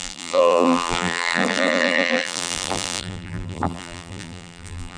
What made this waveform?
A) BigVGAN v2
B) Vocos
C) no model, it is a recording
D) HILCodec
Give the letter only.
A